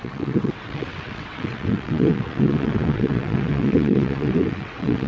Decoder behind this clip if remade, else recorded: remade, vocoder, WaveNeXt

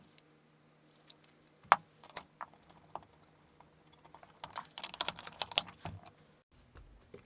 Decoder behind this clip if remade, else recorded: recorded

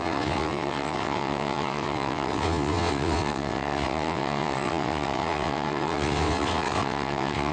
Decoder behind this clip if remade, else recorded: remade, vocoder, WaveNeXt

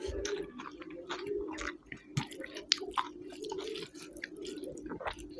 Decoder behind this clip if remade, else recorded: recorded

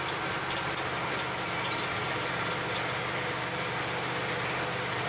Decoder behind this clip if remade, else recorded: recorded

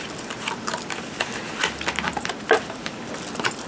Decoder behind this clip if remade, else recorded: recorded